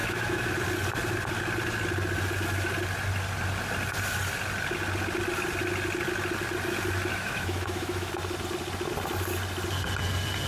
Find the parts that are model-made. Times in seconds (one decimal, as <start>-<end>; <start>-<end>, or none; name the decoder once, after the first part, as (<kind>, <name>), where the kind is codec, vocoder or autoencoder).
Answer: 0.0-0.5 (autoencoder, DAC-VAE); 7.1-8.1